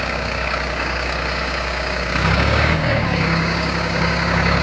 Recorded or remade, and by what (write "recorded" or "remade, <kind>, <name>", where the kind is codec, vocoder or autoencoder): remade, codec, DAC